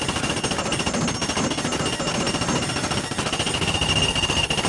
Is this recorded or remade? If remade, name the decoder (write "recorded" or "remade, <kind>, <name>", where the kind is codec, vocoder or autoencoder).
recorded